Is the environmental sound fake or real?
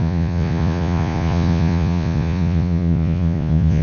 fake